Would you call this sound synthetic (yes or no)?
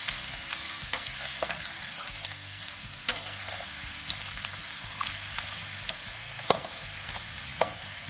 yes